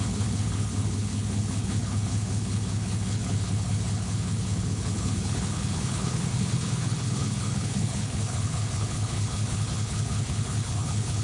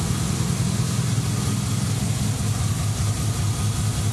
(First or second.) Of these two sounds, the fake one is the first